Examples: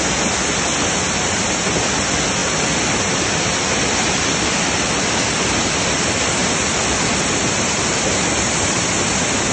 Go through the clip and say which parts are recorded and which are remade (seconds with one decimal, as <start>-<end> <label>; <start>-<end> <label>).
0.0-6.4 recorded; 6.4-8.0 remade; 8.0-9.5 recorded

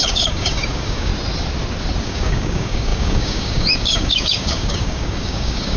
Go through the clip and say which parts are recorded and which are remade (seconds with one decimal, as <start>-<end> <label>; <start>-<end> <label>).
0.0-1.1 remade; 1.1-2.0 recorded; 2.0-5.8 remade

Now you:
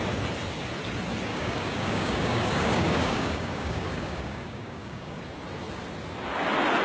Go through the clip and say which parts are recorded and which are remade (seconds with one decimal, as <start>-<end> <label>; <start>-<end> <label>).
0.0-1.3 recorded; 1.3-5.2 remade; 5.2-6.8 recorded

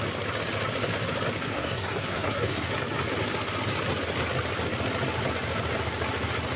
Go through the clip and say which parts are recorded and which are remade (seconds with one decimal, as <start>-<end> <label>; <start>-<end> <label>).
0.0-1.4 recorded; 1.4-2.7 remade; 2.7-6.6 recorded

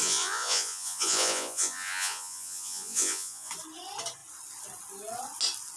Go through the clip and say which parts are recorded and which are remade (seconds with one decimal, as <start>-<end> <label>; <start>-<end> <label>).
0.0-3.5 remade; 3.5-5.8 recorded